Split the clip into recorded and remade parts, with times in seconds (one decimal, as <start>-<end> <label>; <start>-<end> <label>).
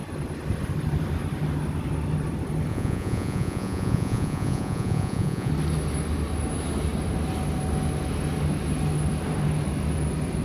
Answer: 0.0-2.7 recorded; 2.7-5.5 remade; 5.5-10.4 recorded